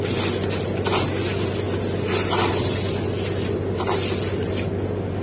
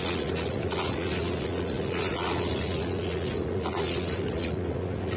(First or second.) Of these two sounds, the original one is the first